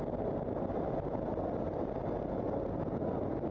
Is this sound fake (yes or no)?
no